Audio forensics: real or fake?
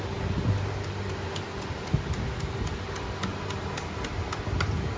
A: real